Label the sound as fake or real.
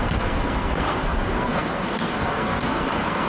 fake